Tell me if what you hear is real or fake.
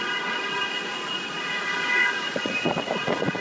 fake